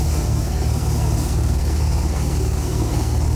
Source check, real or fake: fake